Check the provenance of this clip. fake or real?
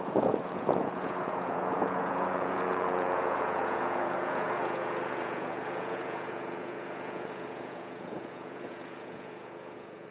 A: fake